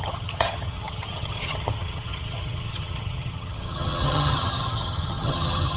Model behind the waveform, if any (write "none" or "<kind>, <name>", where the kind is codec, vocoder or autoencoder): vocoder, HiFi-GAN